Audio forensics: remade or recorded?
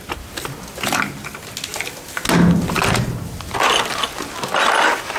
recorded